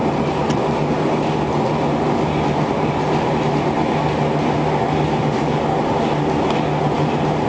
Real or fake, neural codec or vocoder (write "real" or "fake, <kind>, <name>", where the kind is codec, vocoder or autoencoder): real